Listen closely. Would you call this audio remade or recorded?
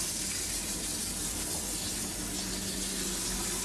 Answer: recorded